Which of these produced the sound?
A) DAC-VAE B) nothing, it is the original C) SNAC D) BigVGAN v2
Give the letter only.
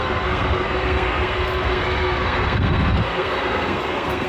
C